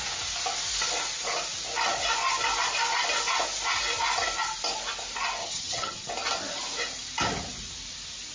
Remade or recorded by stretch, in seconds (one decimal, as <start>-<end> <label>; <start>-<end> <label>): 0.0-5.4 recorded; 5.4-6.1 remade; 6.1-8.3 recorded